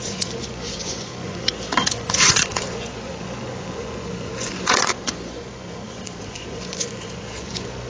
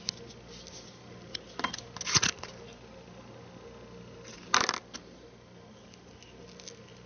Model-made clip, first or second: first